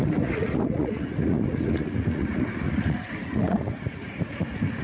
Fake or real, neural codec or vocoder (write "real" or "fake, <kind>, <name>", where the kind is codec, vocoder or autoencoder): fake, vocoder, Vocos